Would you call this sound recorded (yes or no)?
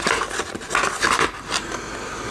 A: yes